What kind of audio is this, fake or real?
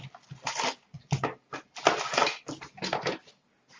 real